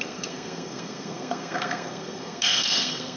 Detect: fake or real fake